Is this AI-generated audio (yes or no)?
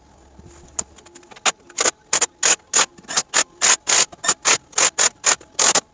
no